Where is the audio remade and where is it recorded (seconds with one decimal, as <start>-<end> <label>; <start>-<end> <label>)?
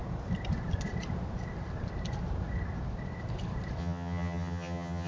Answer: 0.0-3.8 recorded; 3.8-5.1 remade